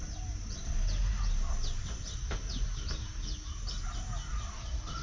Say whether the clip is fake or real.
real